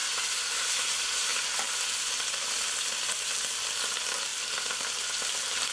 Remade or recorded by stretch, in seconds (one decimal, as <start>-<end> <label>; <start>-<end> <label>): 0.0-0.9 remade; 0.9-1.3 recorded; 1.3-2.8 remade; 2.8-4.3 recorded; 4.3-5.7 remade

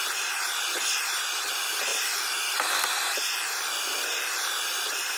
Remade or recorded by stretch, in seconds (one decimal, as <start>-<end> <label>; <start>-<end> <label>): 0.0-1.9 recorded; 1.9-5.2 remade

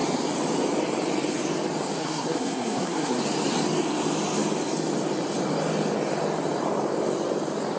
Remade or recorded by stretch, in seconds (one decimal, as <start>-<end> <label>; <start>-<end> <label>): 0.0-2.0 recorded; 2.0-3.2 remade; 3.2-7.8 recorded

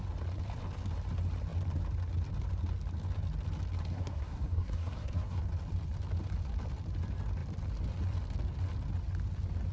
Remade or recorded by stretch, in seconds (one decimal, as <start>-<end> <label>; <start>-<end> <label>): 0.0-3.9 recorded; 3.9-5.4 remade; 5.4-9.7 recorded

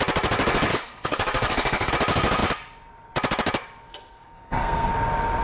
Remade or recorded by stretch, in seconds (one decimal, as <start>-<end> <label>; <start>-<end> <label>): 0.0-0.7 recorded; 0.7-1.9 remade; 1.9-3.9 recorded; 3.9-4.9 remade; 4.9-5.4 recorded

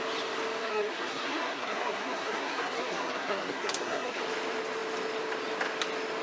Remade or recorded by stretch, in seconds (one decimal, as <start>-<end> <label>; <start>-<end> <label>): 0.0-0.6 recorded; 0.6-4.2 remade; 4.2-6.2 recorded

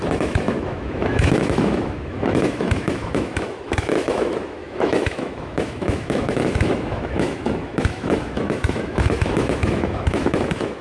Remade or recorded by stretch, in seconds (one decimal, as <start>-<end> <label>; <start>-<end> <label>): 0.0-10.8 remade

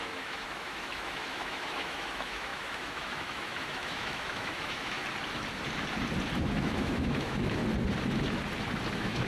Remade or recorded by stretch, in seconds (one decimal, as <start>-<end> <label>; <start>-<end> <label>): 0.0-5.0 remade; 5.0-6.4 recorded; 6.4-7.6 remade; 7.6-8.9 recorded; 8.9-9.3 remade